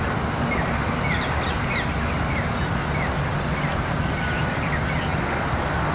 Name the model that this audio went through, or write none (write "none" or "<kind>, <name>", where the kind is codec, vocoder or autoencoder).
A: none